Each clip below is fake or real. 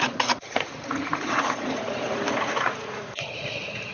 fake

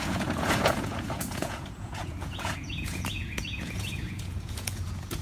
fake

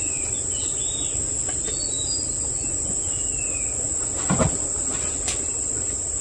real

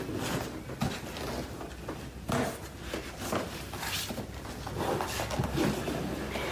real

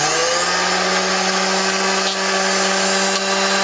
real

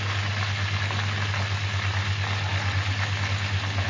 real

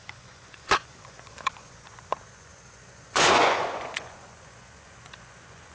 fake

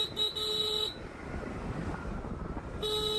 real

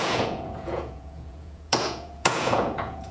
fake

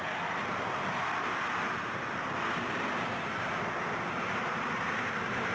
real